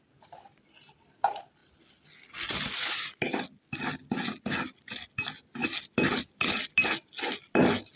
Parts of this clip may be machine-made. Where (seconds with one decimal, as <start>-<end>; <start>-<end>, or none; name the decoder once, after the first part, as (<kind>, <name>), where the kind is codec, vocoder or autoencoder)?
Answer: none